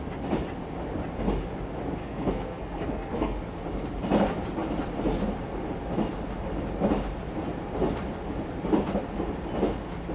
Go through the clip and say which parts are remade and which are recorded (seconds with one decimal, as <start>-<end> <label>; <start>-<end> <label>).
0.0-2.0 recorded; 2.0-3.4 remade; 3.4-10.1 recorded